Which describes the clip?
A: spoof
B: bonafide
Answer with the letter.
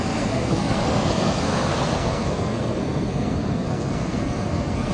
A